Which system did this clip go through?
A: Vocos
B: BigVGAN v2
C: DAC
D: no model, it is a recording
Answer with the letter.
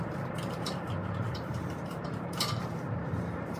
B